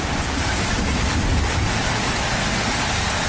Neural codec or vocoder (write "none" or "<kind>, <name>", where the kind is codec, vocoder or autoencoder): none